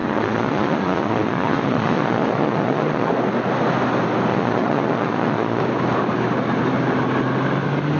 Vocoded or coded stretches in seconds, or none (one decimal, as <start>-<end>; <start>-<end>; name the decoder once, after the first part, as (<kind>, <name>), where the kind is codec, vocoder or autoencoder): 0.0-3.1 (vocoder, Vocos); 4.3-5.6